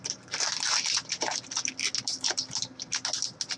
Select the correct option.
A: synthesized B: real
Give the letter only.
B